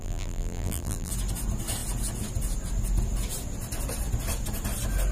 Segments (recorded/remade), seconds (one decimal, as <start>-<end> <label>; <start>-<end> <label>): 0.0-1.1 remade; 1.1-5.1 recorded